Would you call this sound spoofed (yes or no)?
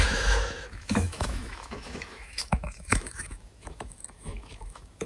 yes